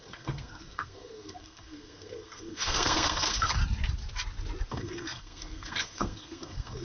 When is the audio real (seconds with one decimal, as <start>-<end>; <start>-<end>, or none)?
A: 3.6-4.7